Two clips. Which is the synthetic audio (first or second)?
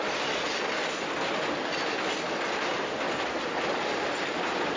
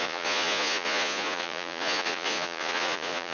second